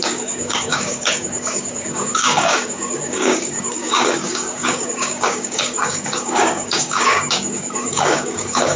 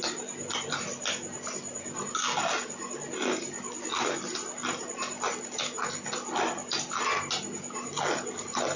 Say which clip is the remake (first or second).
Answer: first